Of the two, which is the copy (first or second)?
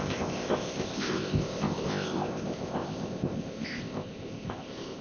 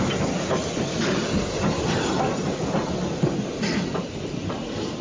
first